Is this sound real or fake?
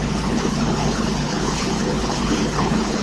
fake